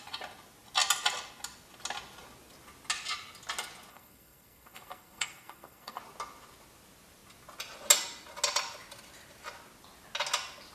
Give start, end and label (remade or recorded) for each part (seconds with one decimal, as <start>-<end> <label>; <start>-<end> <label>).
0.0-3.9 recorded; 3.9-6.0 remade; 6.0-10.7 recorded